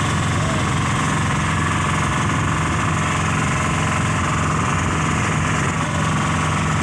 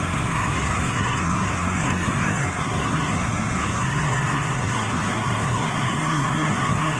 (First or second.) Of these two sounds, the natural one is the first